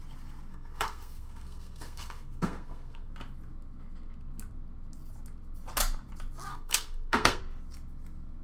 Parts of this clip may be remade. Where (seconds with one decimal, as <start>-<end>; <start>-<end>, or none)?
0.5-3.1; 6.5-7.4